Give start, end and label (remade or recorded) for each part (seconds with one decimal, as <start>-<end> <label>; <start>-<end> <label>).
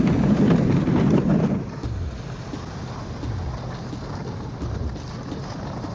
0.0-5.9 recorded